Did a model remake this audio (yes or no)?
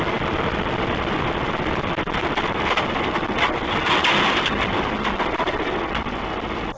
no